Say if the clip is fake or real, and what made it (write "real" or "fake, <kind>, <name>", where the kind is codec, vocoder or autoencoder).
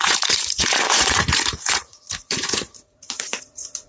fake, vocoder, Vocos